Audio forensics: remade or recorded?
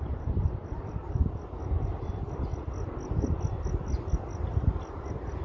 recorded